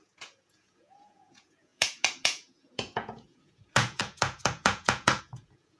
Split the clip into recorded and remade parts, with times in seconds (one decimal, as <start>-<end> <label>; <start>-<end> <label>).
0.0-5.8 remade

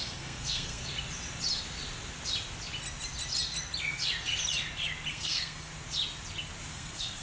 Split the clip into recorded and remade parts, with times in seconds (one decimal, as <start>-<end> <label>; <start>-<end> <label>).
0.0-0.8 remade; 0.8-5.1 recorded; 5.1-5.7 remade; 5.7-6.7 recorded; 6.7-7.2 remade